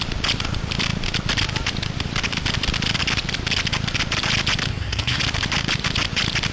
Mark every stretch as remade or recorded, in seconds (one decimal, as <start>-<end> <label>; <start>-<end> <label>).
0.0-4.7 recorded; 4.7-5.2 remade; 5.2-6.5 recorded